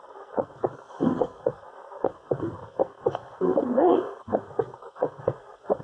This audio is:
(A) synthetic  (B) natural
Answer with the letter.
A